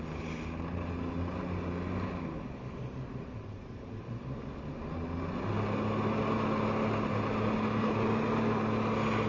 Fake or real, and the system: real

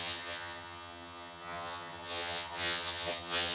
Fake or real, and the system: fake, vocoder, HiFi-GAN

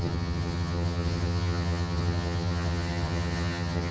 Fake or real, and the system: fake, vocoder, HiFi-GAN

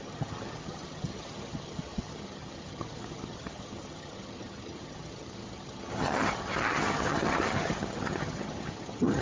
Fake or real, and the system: fake, vocoder, HiFi-GAN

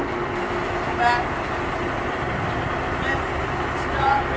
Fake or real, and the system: real